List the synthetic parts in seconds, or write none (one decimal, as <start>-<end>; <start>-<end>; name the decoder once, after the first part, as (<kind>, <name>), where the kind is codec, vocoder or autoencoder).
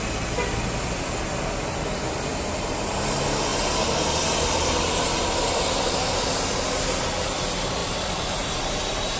7.8-9.2 (vocoder, BigVGAN v2)